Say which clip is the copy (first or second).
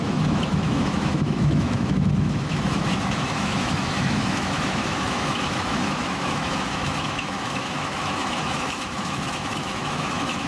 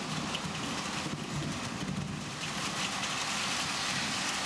first